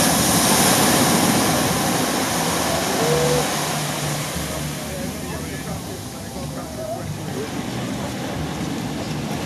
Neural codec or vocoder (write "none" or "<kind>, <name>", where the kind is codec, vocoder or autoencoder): none